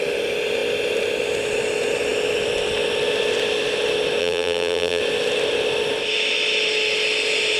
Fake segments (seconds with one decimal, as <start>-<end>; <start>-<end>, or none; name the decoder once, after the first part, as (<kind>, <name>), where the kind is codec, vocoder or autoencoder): 4.2-5.0 (vocoder, BigVGAN v2)